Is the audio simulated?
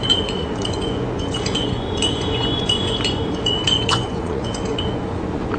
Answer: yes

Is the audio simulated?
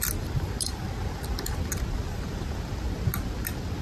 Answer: no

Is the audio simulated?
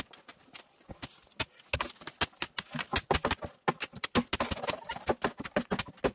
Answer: no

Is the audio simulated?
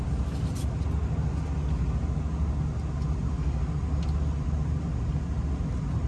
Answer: no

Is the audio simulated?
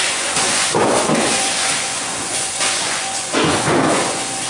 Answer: yes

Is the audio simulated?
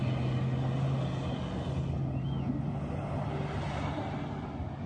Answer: no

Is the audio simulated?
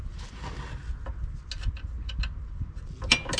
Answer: no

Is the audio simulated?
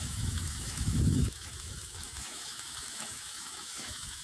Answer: yes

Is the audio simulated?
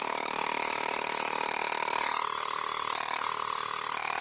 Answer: yes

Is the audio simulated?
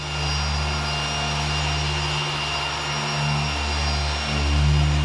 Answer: no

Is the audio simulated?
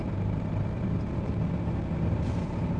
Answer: yes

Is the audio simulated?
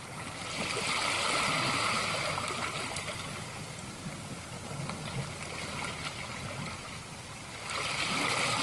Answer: no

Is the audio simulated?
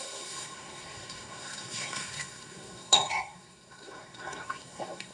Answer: yes